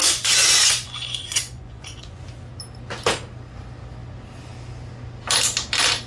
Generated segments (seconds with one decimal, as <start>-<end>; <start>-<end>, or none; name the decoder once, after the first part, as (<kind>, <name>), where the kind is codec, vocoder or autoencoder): 0.0-2.2 (vocoder, Vocos)